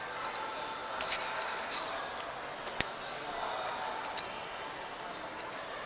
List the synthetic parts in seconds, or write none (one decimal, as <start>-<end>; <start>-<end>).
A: none